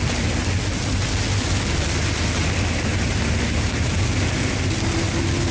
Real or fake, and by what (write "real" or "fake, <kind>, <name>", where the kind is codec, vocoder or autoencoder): real